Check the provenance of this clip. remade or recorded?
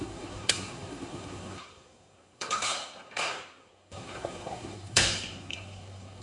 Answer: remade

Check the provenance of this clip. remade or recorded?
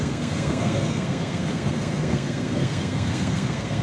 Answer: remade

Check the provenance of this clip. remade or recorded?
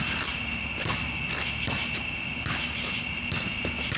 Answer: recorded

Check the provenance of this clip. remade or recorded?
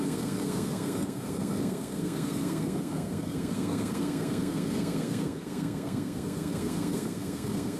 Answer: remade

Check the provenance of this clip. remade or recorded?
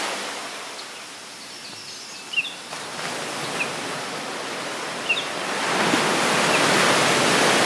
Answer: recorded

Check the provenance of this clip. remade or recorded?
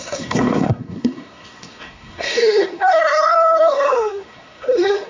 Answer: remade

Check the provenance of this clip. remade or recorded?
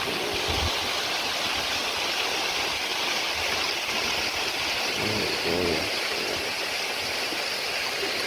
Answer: recorded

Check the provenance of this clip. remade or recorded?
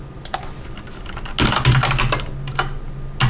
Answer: recorded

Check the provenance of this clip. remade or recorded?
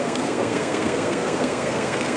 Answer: remade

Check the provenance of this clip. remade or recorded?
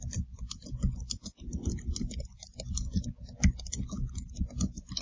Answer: recorded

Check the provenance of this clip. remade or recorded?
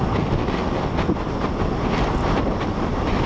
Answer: recorded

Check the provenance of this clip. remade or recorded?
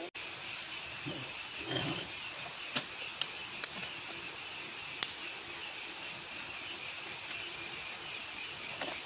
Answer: recorded